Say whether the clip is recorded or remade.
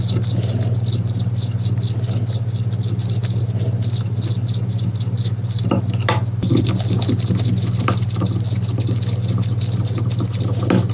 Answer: recorded